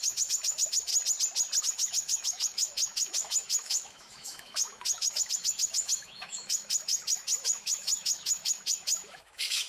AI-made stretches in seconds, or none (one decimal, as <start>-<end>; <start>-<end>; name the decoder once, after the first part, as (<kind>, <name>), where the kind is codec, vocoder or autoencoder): 0.0-0.9 (autoencoder, DAC-VAE); 1.6-9.7